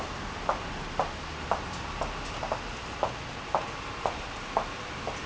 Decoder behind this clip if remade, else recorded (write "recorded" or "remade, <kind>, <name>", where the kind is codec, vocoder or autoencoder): recorded